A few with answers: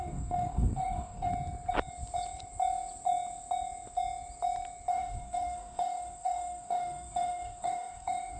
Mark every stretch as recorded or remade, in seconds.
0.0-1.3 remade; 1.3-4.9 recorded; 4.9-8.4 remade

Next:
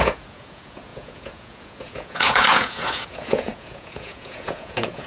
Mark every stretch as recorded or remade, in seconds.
0.0-5.1 remade

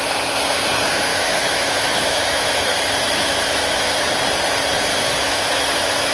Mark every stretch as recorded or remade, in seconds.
0.0-1.1 recorded; 1.1-4.0 remade; 4.0-4.9 recorded; 4.9-6.1 remade

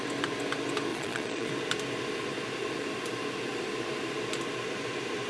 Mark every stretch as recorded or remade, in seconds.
0.0-0.9 recorded; 0.9-1.5 remade; 1.5-5.3 recorded

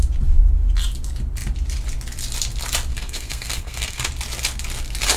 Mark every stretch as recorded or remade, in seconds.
0.0-2.9 recorded; 2.9-4.1 remade; 4.1-5.2 recorded

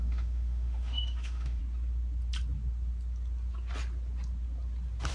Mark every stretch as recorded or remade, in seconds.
0.0-1.6 remade; 1.6-5.1 recorded

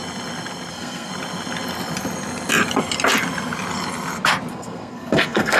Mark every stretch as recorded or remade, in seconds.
0.0-0.7 recorded; 0.7-1.1 remade; 1.1-4.5 recorded; 4.5-5.6 remade